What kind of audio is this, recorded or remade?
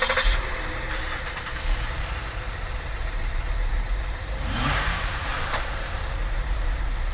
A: remade